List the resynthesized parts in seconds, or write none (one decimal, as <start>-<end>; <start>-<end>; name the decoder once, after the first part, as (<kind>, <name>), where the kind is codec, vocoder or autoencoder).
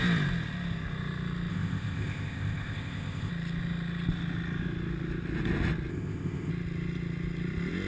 1.5-3.3 (codec, ZipCodec); 5.9-6.5